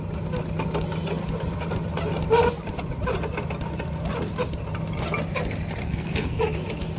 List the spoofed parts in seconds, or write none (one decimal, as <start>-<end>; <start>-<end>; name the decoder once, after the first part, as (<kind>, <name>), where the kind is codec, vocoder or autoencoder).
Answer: 5.8-6.4 (codec, SNAC)